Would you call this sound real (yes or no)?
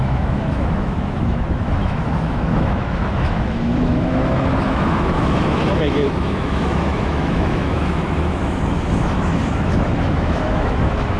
no